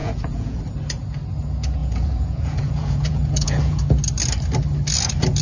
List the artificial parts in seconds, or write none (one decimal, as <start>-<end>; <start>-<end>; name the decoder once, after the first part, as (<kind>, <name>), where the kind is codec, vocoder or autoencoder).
0.0-0.6 (vocoder, Vocos); 1.8-3.8